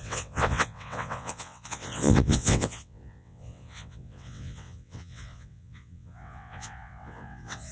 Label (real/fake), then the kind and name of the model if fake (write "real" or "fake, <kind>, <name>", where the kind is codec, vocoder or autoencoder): fake, vocoder, WaveNeXt